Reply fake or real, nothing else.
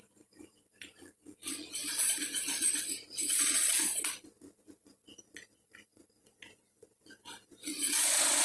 fake